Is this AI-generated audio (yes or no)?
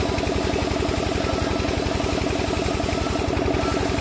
no